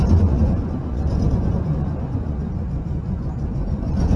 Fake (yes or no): yes